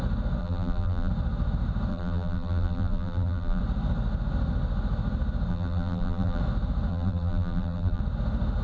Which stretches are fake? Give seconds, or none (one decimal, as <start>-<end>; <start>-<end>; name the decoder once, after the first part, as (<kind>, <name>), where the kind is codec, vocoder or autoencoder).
0.4-1.1 (vocoder, BigVGAN v2); 1.9-3.6; 5.5-6.4; 6.9-8.0